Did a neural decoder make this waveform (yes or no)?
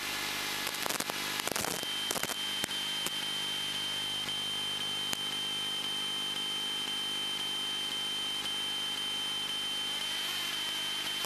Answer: no